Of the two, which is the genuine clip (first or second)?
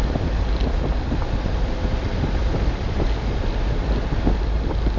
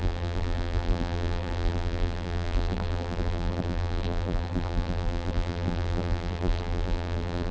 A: first